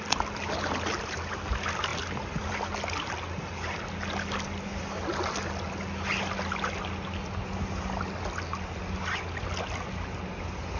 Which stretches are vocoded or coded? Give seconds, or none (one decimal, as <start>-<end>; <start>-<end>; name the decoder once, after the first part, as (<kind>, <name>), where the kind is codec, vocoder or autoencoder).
none